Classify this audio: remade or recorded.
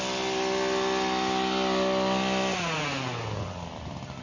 recorded